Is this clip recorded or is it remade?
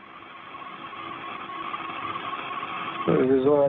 recorded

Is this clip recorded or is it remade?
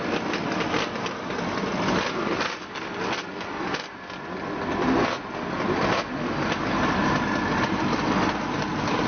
recorded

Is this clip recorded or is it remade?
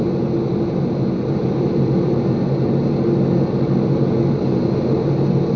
recorded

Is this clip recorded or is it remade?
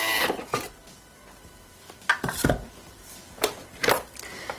recorded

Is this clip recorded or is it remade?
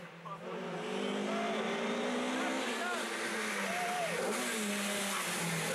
recorded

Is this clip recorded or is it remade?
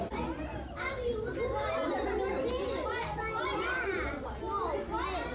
recorded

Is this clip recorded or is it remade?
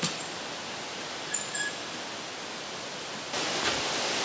recorded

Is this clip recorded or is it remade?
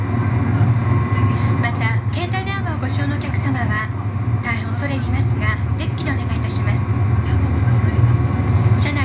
recorded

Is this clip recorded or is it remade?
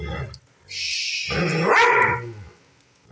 recorded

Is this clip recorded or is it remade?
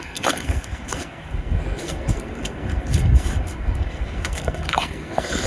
remade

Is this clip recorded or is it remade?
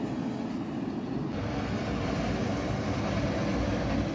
recorded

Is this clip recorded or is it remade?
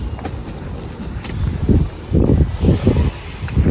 recorded